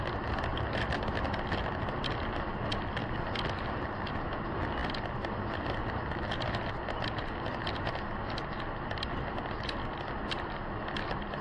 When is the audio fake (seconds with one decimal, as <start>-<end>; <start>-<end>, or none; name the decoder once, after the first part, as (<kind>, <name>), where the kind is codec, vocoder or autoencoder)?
0.5-1.0 (vocoder, BigVGAN v2)